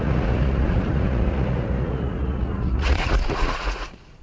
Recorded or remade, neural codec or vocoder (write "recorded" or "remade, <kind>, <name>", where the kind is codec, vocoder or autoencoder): remade, vocoder, Vocos